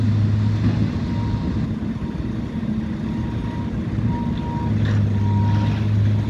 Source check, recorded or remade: recorded